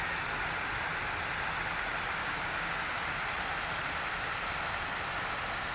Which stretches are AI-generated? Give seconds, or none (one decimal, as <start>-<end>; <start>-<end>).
2.2-3.2

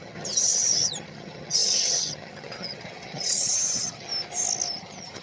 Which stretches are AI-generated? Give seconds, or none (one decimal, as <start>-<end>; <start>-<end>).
0.0-4.1; 4.8-5.2

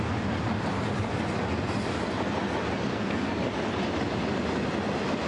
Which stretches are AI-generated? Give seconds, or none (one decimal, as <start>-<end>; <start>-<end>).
2.9-3.4

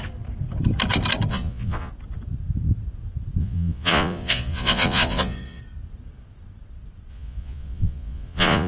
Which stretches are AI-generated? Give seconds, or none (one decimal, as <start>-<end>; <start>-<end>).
1.3-1.9; 3.4-5.6; 7.1-8.7

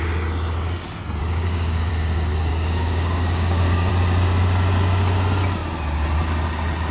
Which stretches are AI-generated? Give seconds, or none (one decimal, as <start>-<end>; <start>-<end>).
1.2-1.9; 2.5-3.9